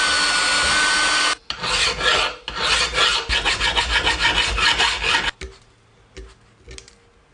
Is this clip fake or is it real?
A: real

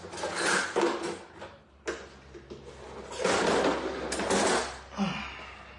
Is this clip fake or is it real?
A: real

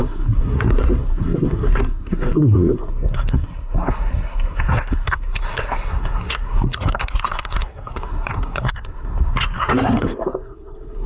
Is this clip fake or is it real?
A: fake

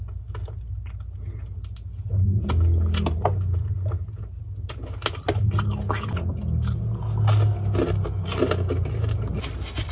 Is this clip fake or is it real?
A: real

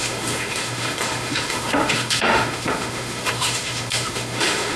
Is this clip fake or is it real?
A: fake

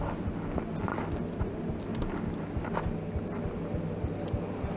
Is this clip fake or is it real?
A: real